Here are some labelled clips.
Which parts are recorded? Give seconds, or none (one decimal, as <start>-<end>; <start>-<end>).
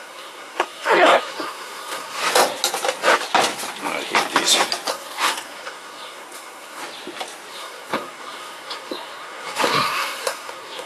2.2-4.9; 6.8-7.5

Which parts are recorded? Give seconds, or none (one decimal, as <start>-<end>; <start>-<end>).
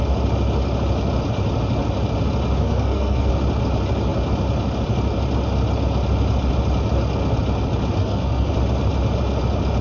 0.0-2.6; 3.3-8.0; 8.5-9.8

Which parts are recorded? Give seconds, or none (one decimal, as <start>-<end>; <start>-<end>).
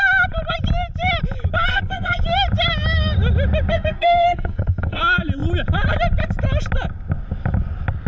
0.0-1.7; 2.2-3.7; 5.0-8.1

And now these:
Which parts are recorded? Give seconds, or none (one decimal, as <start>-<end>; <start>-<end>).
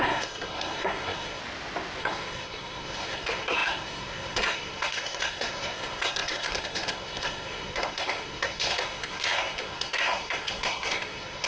1.4-2.0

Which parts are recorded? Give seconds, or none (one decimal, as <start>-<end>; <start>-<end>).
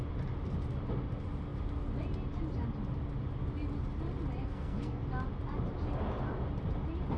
0.0-4.4; 5.0-7.2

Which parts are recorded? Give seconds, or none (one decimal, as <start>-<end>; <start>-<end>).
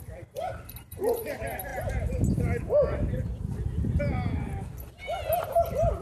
0.0-6.0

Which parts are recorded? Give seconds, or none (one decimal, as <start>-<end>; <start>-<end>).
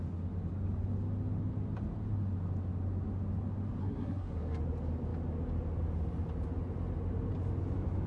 0.0-3.8; 4.6-8.1